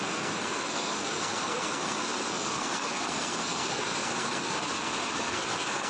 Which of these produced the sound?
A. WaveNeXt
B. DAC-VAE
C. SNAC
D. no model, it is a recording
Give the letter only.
C